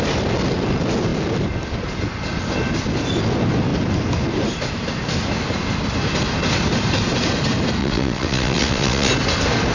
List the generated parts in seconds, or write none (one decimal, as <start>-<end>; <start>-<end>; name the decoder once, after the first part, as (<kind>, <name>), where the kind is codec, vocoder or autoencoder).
7.8-9.1 (vocoder, WaveNeXt)

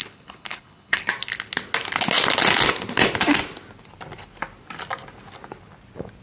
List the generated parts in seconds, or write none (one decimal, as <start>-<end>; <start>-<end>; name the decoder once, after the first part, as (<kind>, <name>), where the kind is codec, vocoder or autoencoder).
0.0-1.1 (codec, HILCodec)

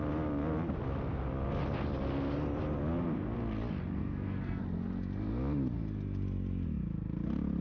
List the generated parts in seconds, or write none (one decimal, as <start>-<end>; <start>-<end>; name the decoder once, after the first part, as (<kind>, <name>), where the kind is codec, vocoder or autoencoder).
4.0-4.6 (codec, SNAC)

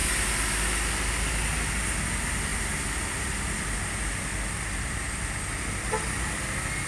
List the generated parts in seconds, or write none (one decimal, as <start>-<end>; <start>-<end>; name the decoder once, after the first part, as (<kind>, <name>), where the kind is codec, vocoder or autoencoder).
none

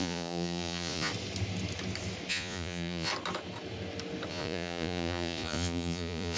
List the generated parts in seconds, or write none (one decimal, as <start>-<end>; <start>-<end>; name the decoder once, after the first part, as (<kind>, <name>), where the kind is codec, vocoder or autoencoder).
0.0-1.1 (vocoder, Vocos); 2.3-3.1; 4.3-6.4

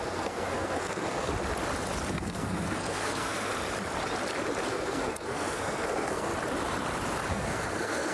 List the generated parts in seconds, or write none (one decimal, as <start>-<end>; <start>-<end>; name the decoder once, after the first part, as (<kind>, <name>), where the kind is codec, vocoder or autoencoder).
0.0-1.3 (codec, SNAC); 2.1-3.5; 4.7-6.3; 7.3-8.1